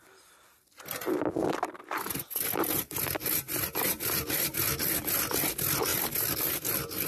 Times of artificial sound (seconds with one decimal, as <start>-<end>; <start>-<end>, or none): none